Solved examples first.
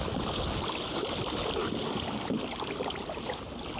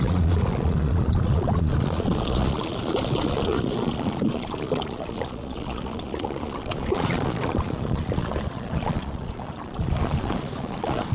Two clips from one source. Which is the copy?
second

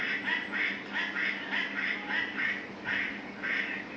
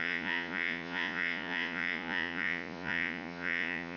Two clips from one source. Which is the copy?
second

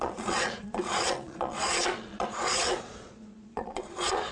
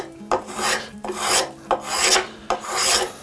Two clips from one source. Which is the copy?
first